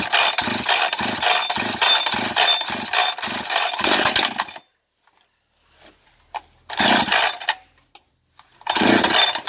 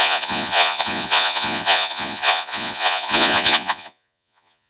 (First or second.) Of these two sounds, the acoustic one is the first